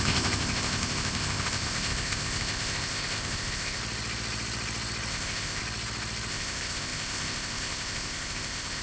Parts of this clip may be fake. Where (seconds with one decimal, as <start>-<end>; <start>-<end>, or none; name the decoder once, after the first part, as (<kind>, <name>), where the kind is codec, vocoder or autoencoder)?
0.0-3.8 (codec, ZipCodec); 5.1-5.6; 6.3-8.8